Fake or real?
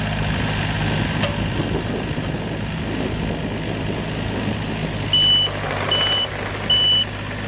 real